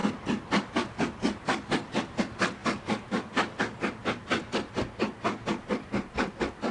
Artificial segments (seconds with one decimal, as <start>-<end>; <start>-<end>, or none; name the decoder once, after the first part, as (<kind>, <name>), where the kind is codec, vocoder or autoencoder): none